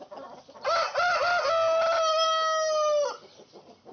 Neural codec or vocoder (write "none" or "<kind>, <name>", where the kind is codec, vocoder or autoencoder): none